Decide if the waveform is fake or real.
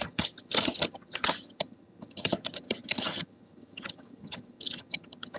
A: fake